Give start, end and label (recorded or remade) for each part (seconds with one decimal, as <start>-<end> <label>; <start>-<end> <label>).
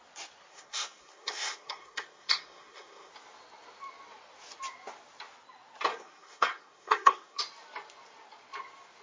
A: 0.0-0.5 recorded; 0.5-3.1 remade; 3.1-5.9 recorded; 5.9-7.4 remade; 7.4-9.0 recorded